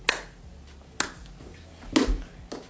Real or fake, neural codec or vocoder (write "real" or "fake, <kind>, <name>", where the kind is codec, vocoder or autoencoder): real